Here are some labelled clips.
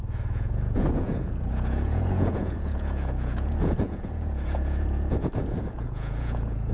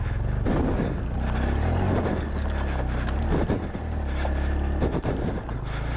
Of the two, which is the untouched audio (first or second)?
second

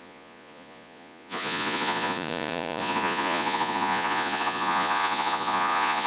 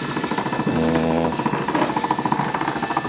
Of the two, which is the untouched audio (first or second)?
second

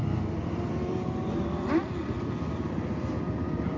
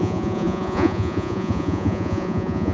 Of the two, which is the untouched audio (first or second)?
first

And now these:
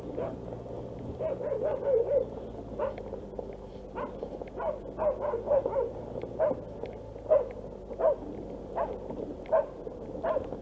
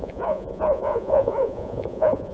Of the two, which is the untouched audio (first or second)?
first